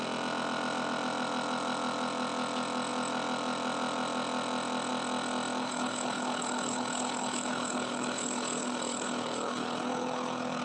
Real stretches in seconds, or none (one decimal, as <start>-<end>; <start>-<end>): 0.0-5.6